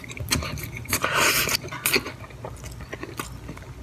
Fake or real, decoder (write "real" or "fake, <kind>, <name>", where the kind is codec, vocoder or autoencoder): real